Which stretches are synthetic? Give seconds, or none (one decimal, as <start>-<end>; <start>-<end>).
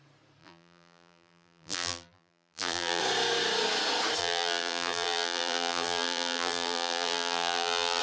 0.4-3.0; 4.2-8.0